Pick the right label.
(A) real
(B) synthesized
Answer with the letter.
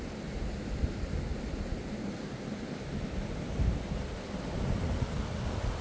A